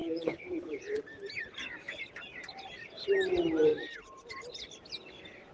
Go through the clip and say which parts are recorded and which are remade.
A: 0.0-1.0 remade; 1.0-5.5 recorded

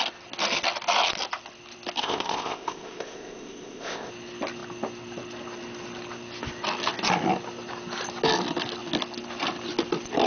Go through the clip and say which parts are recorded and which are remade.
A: 0.0-2.0 recorded; 2.0-4.1 remade; 4.1-10.3 recorded

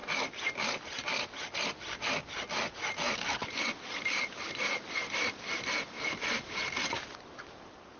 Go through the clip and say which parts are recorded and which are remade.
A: 0.0-8.0 recorded

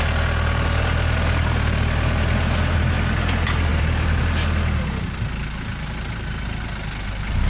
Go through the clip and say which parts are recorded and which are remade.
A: 0.0-3.7 recorded; 3.7-4.2 remade; 4.2-7.5 recorded

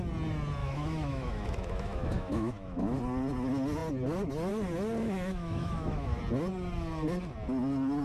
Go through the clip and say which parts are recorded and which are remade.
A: 0.0-0.6 recorded; 0.6-3.0 remade; 3.0-5.0 recorded; 5.0-6.2 remade; 6.2-8.0 recorded

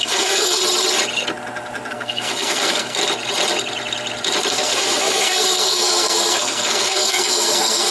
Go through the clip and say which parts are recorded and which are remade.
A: 0.0-0.6 remade; 0.6-1.9 recorded; 1.9-3.0 remade; 3.0-4.5 recorded; 4.5-7.9 remade

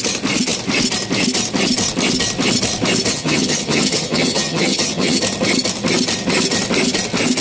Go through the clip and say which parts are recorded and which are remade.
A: 0.0-3.1 recorded; 3.1-5.2 remade; 5.2-7.4 recorded